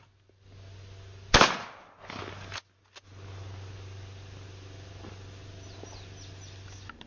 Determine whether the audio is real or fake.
real